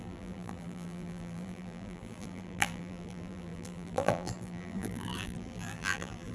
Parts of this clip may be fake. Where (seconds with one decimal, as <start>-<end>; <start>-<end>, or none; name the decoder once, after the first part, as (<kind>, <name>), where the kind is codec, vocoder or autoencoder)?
0.0-6.3 (vocoder, BigVGAN v2)